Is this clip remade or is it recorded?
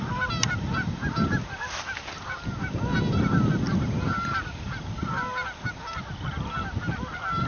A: recorded